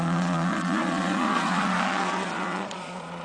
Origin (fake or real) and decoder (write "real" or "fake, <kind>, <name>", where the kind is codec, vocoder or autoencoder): fake, vocoder, Vocos